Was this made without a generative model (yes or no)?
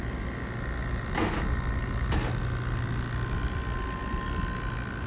yes